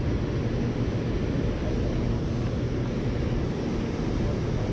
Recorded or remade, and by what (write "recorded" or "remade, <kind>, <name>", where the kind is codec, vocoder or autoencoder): recorded